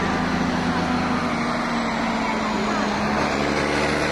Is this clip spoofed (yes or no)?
no